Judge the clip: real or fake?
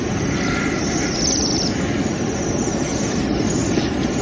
real